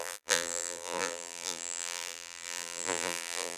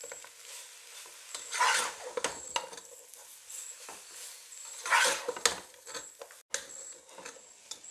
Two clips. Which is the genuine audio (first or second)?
second